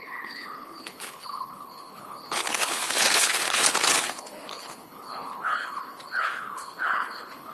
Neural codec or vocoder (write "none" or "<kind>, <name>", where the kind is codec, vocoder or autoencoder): codec, HILCodec